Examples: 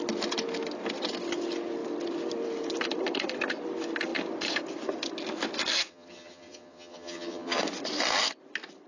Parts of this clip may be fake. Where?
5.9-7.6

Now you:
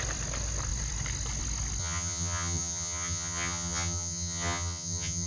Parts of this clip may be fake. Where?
1.8-5.3

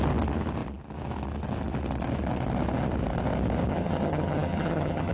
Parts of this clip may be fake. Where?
3.7-5.1